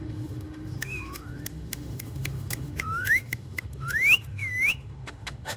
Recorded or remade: remade